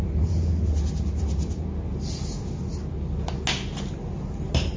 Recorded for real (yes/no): yes